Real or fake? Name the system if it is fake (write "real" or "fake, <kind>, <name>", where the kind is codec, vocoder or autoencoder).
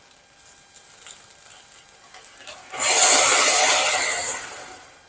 real